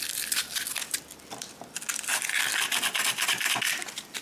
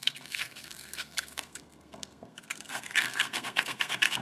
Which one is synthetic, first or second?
second